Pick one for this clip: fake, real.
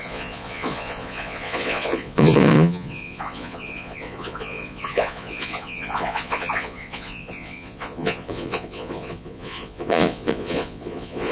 fake